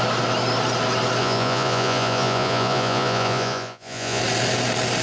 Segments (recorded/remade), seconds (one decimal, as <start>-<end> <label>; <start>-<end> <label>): 0.0-1.2 recorded; 1.2-4.2 remade; 4.2-5.0 recorded